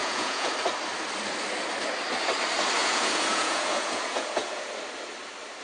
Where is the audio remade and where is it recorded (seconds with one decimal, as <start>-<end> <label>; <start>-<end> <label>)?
0.0-0.5 remade; 0.5-2.8 recorded; 2.8-4.7 remade; 4.7-5.6 recorded